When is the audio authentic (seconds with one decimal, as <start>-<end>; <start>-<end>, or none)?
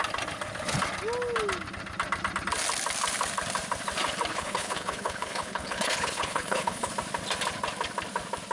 0.0-4.3; 6.9-8.5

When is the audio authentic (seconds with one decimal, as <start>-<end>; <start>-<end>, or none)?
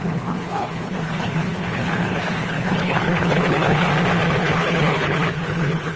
3.9-4.4